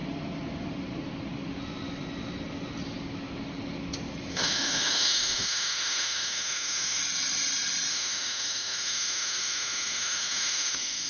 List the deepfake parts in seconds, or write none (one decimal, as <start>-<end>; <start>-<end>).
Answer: 4.3-7.0; 7.9-11.1